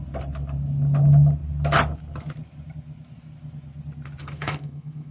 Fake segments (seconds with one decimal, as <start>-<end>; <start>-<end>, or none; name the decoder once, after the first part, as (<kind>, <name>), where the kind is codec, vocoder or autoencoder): 4.2-5.1 (codec, SNAC)